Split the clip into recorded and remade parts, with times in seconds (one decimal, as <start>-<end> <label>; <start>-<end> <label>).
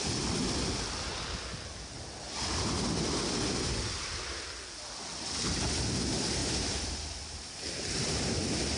0.0-6.4 recorded; 6.4-8.4 remade; 8.4-8.8 recorded